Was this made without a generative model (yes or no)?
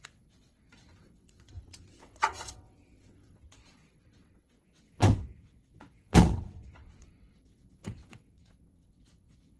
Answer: no